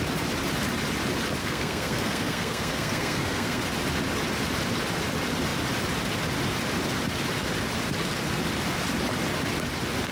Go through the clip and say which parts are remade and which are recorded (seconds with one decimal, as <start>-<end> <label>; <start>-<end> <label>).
0.0-1.4 recorded; 1.4-3.6 remade; 3.6-10.1 recorded